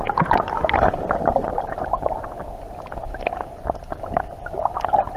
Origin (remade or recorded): recorded